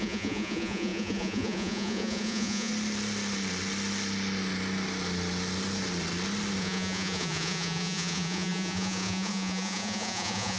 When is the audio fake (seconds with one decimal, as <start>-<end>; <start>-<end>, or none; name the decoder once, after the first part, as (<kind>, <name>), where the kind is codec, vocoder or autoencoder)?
0.0-2.7 (vocoder, Vocos); 6.6-10.6